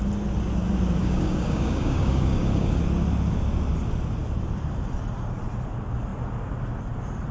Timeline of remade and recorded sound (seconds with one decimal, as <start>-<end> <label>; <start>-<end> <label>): 0.0-1.0 recorded; 1.0-2.8 remade; 2.8-7.3 recorded